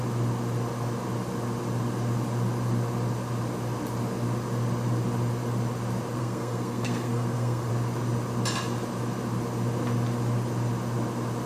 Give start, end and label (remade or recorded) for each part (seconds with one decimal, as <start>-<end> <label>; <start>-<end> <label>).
0.0-6.2 recorded; 6.2-7.7 remade; 7.7-11.5 recorded